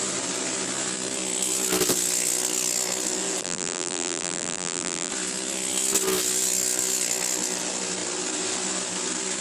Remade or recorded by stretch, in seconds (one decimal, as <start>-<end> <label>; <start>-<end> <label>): 0.0-3.4 recorded; 3.4-5.1 remade; 5.1-9.4 recorded